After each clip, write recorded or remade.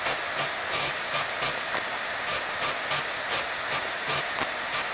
recorded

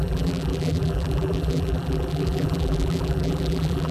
remade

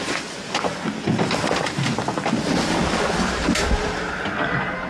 recorded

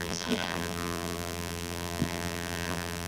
remade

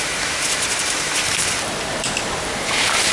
remade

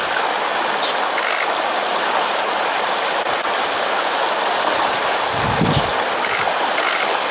recorded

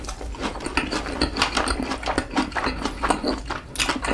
recorded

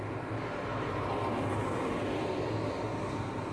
recorded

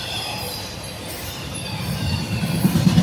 remade